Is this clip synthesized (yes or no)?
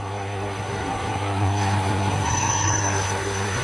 yes